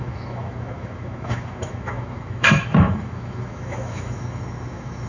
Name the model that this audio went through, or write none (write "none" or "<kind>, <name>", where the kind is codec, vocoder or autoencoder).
autoencoder, DAC-VAE